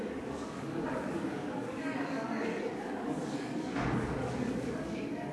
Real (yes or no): no